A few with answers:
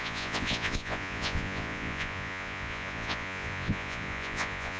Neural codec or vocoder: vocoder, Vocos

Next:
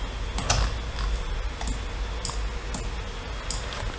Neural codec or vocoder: none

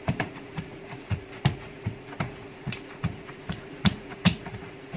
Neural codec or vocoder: vocoder, Vocos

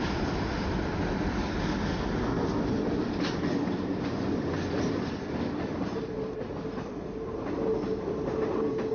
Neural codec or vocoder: none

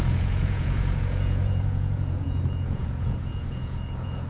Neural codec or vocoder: vocoder, Vocos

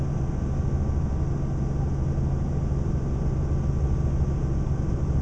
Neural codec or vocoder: none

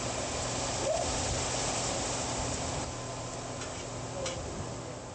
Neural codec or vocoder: none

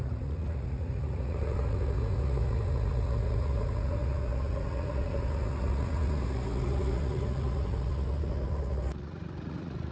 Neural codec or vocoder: vocoder, Vocos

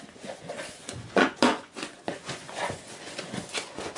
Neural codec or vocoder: vocoder, Vocos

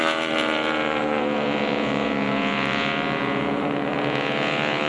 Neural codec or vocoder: vocoder, Vocos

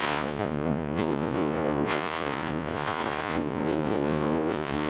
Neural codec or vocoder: vocoder, Vocos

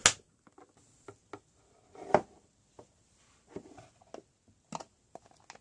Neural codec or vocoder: none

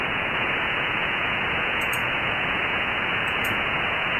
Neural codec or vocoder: vocoder, Vocos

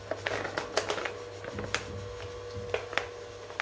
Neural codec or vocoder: none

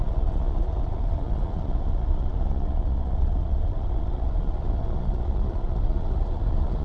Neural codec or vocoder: vocoder, Vocos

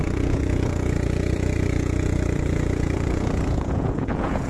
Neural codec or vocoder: vocoder, Vocos